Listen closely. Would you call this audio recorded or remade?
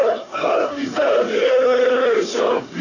remade